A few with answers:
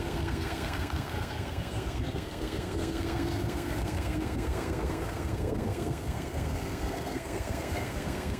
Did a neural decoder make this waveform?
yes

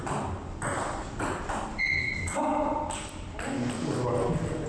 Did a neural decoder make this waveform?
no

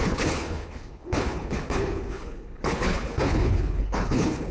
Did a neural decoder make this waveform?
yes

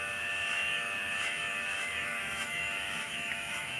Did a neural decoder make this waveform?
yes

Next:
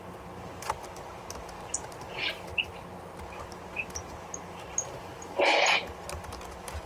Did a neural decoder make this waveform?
no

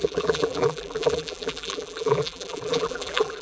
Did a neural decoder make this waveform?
yes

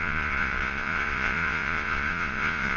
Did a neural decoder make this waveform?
yes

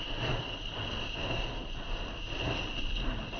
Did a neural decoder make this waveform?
no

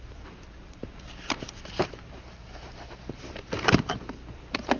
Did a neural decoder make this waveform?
yes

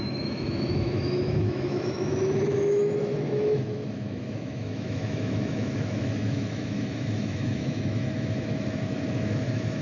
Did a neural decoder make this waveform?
yes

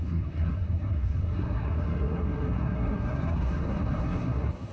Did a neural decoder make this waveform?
yes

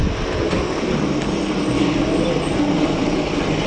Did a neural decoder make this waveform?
no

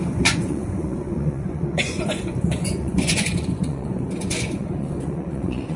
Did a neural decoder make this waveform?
yes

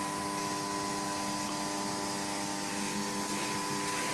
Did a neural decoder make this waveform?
no